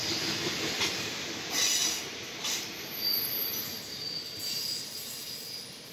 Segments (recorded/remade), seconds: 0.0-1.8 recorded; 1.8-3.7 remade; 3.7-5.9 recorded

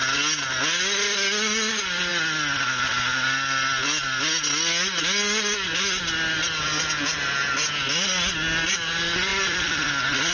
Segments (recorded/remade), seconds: 0.0-9.3 recorded; 9.3-9.9 remade; 9.9-10.3 recorded

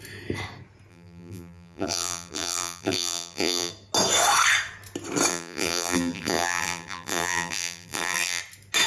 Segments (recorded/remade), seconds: 0.0-0.9 recorded; 0.9-3.7 remade; 3.7-5.3 recorded; 5.3-8.4 remade; 8.4-8.9 recorded

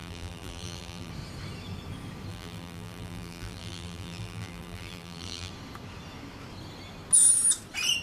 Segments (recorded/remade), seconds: 0.0-1.1 remade; 1.1-2.3 recorded; 2.3-5.5 remade; 5.5-8.0 recorded

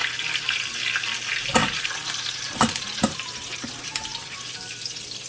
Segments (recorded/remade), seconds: 0.0-0.7 remade; 0.7-1.6 recorded; 1.6-4.8 remade; 4.8-5.3 recorded